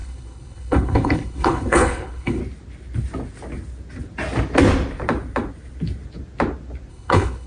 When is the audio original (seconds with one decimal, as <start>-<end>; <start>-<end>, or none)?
2.4-6.9